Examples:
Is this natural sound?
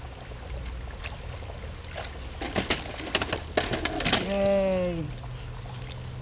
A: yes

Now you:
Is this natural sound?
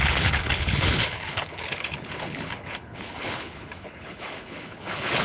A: no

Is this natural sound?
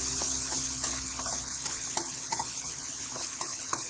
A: no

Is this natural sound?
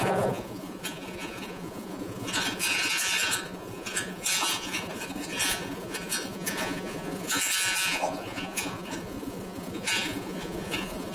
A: no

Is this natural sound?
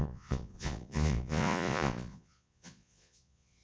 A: no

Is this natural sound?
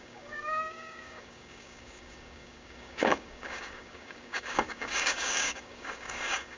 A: no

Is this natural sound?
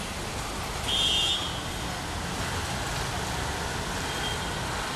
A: yes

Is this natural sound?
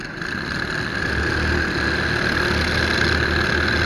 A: yes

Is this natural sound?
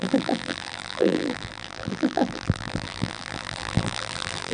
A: no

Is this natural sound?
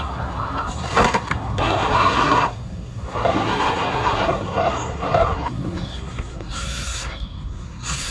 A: no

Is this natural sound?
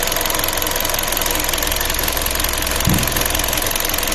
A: yes